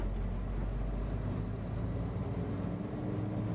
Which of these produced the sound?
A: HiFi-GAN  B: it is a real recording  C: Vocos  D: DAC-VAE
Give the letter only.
B